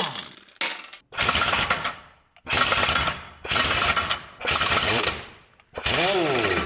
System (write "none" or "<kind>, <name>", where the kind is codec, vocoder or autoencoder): none